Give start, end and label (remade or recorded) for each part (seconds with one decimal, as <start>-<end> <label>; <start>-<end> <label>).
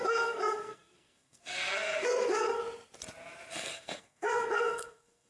0.0-2.6 remade; 2.6-3.5 recorded; 3.5-5.3 remade